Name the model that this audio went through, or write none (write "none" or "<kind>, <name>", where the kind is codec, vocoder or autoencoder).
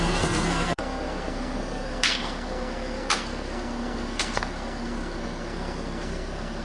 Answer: codec, SNAC